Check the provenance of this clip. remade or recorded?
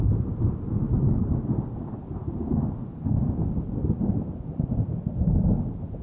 recorded